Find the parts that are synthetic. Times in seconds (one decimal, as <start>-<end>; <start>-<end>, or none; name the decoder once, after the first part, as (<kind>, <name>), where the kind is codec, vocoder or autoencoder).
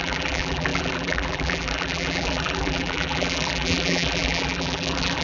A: 0.0-5.2 (vocoder, BigVGAN v2)